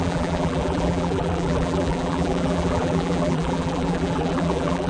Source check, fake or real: fake